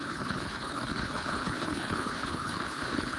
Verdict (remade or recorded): remade